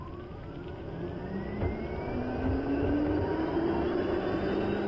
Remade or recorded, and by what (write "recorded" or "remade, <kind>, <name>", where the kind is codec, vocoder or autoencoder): recorded